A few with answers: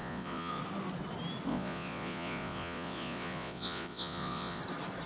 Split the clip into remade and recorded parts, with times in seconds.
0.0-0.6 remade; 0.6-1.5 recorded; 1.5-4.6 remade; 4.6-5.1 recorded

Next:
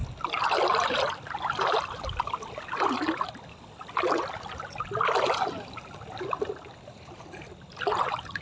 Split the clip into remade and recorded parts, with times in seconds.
0.0-8.4 recorded

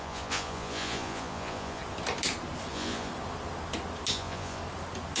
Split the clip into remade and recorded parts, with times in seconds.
0.0-1.8 remade; 1.8-2.7 recorded; 2.7-3.1 remade; 3.1-4.1 recorded; 4.1-4.6 remade; 4.6-5.2 recorded

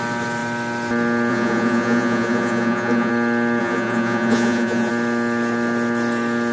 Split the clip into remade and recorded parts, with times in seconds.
0.0-1.3 recorded; 1.3-3.1 remade; 3.1-3.6 recorded; 3.6-4.9 remade; 4.9-6.5 recorded

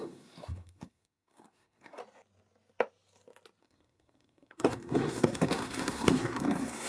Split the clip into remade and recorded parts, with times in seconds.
0.0-2.0 remade; 2.0-3.6 recorded; 3.6-6.9 remade

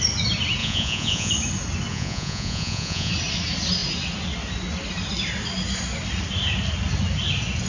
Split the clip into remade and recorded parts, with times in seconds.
0.0-0.6 recorded; 0.6-1.3 remade; 1.3-1.9 recorded; 1.9-3.1 remade; 3.1-7.7 recorded